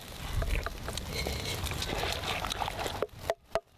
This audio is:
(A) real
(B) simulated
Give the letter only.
A